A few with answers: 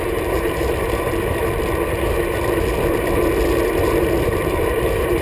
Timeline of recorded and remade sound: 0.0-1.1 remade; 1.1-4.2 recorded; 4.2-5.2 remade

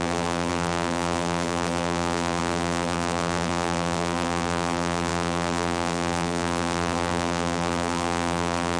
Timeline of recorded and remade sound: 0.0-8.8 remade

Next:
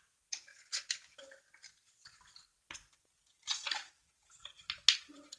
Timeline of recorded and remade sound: 0.0-5.4 recorded

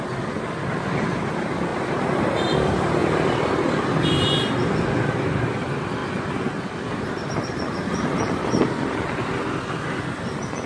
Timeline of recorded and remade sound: 0.0-1.7 remade; 1.7-2.2 recorded; 2.2-3.0 remade; 3.0-5.5 recorded; 5.5-10.7 remade

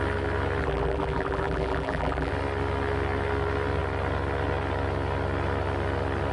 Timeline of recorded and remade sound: 0.0-0.6 recorded; 0.6-2.3 remade; 2.3-6.3 recorded